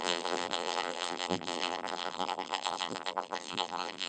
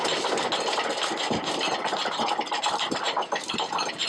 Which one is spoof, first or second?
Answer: first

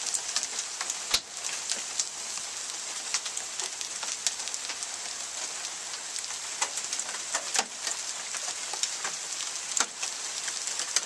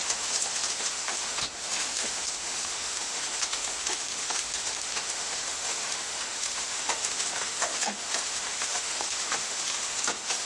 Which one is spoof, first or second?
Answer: second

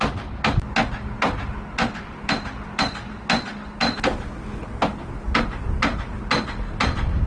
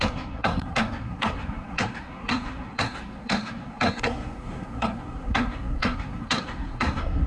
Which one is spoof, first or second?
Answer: second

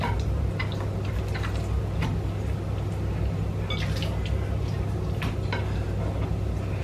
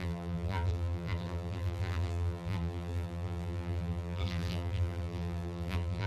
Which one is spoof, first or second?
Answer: second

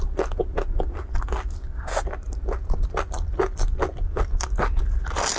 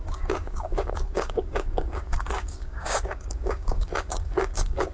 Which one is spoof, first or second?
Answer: second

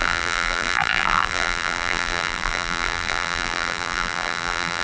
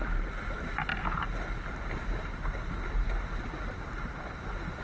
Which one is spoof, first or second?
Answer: first